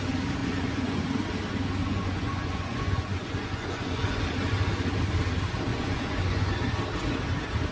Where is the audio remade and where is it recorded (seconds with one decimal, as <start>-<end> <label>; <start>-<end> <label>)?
0.0-0.4 recorded; 0.4-1.0 remade; 1.0-1.8 recorded; 1.8-4.2 remade; 4.2-5.7 recorded; 5.7-6.5 remade; 6.5-7.7 recorded